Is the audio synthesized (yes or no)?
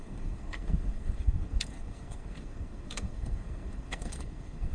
yes